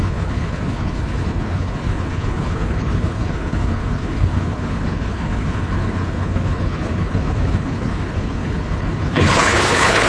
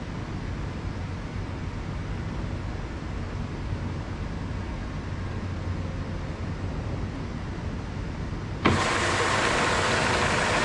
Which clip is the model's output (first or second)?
first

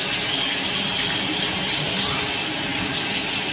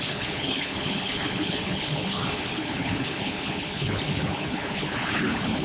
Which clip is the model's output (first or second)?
second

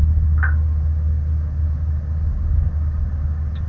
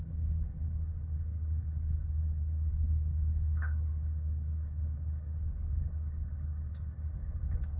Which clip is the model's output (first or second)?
second